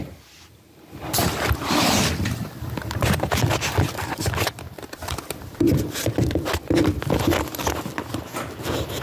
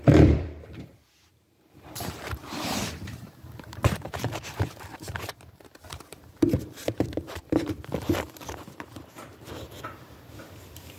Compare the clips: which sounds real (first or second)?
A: first